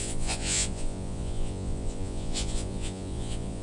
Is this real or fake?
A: fake